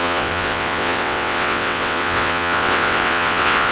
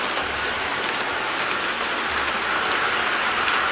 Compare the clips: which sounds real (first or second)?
second